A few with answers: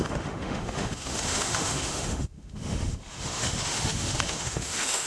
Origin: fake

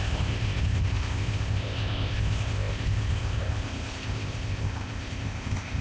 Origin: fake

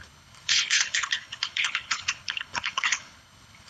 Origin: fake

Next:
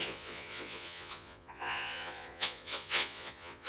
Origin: fake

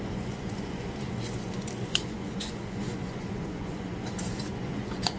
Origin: fake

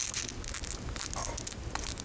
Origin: real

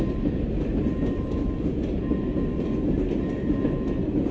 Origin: real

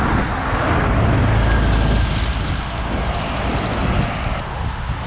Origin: real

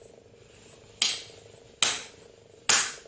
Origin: real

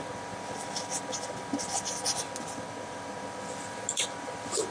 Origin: real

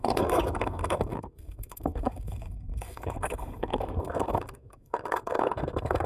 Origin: fake